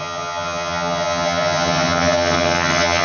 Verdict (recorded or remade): remade